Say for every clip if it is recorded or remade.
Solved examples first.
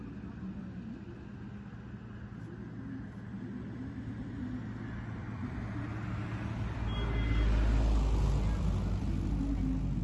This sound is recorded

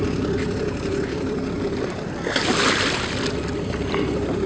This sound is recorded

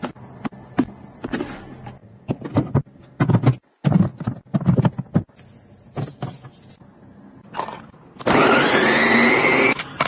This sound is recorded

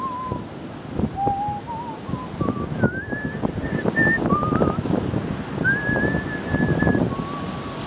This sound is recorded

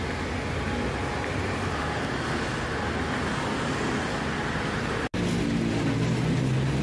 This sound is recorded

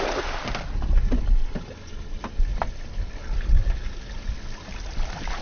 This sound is recorded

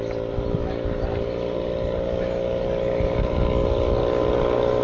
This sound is recorded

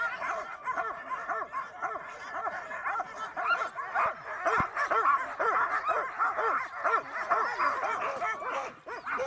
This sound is recorded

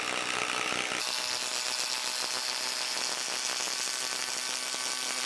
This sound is recorded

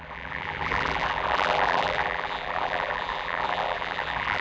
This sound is remade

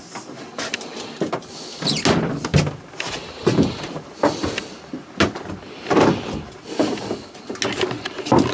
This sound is recorded